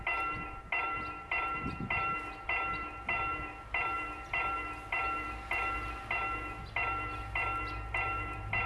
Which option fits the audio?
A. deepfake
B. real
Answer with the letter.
B